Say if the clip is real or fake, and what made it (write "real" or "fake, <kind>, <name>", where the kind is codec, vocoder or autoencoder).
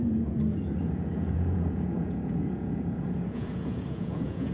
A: fake, vocoder, Vocos